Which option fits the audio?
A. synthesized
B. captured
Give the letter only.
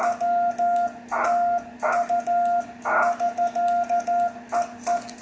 B